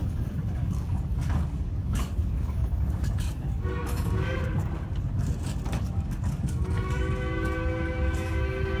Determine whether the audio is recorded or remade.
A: remade